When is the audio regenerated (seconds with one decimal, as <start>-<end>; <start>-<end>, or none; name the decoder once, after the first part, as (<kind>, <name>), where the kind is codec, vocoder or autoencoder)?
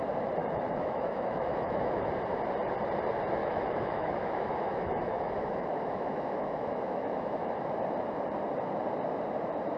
0.4-2.1 (autoencoder, DAC-VAE); 3.4-7.7